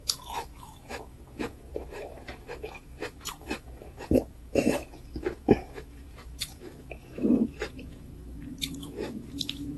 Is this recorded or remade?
remade